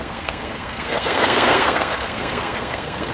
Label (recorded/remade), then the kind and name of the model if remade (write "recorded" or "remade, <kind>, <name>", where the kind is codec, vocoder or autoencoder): remade, codec, SNAC